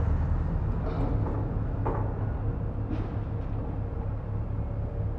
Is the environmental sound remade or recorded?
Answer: recorded